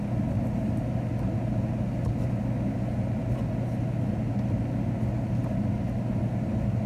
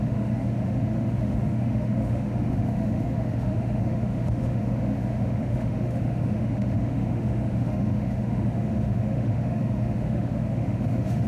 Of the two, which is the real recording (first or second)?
first